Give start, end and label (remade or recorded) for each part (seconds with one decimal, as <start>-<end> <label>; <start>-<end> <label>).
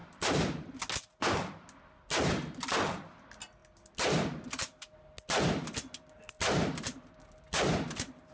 0.0-0.7 remade; 0.7-8.3 recorded